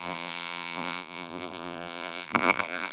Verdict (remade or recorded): remade